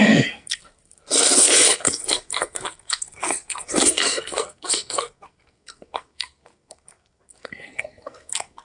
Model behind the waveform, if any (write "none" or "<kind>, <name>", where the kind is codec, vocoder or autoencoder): codec, SNAC